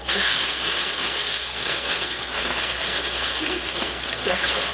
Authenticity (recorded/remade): remade